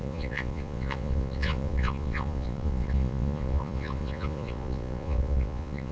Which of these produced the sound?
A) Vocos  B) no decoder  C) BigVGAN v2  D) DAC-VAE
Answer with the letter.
A